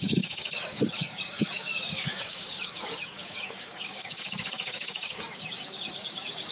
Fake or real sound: fake